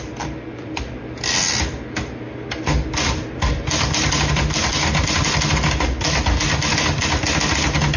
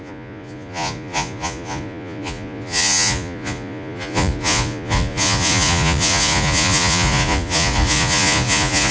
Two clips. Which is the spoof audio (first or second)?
second